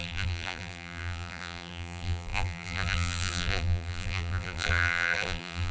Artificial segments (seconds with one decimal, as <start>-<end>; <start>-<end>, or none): 0.0-5.7